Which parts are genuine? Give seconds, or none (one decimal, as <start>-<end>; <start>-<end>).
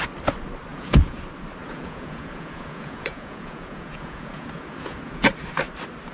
0.0-0.7; 1.2-1.6; 5.3-6.1